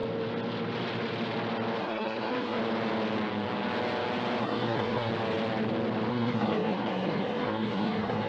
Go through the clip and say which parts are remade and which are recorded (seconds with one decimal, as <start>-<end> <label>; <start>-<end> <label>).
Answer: 0.0-1.8 recorded; 1.8-2.6 remade; 2.6-4.4 recorded; 4.4-5.1 remade; 5.1-6.1 recorded; 6.1-8.3 remade